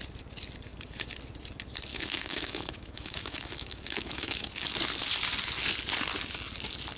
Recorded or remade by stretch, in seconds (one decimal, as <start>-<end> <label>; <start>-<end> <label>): 0.0-1.9 recorded; 1.9-4.5 remade; 4.5-7.0 recorded